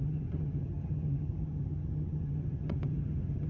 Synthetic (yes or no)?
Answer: yes